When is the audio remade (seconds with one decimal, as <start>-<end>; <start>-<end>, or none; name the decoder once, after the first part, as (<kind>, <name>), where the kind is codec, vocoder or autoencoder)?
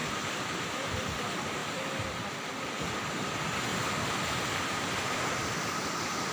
0.0-1.2 (vocoder, BigVGAN v2)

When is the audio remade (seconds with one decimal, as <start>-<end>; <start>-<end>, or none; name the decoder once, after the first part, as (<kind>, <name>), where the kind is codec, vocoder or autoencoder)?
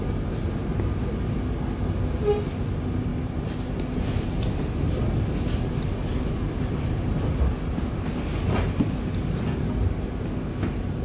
none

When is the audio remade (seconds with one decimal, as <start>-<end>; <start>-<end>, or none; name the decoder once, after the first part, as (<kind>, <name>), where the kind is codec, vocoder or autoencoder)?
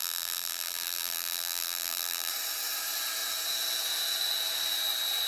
0.0-2.3 (vocoder, BigVGAN v2)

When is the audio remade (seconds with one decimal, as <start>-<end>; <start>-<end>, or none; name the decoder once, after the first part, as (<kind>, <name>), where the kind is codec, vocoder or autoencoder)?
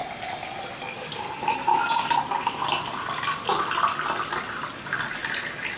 0.0-5.8 (vocoder, BigVGAN v2)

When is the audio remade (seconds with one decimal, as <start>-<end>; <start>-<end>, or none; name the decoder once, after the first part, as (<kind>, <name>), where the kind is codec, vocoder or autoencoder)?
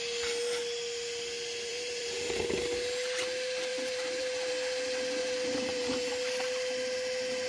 1.7-2.4 (vocoder, BigVGAN v2); 3.7-4.5; 5.2-6.1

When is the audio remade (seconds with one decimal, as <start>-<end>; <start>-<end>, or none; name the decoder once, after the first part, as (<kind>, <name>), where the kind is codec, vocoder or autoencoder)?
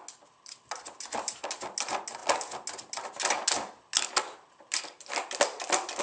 none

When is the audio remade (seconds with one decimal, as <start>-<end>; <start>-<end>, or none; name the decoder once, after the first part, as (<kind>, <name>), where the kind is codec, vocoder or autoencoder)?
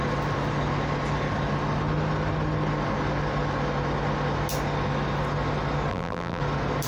5.9-6.4 (vocoder, BigVGAN v2)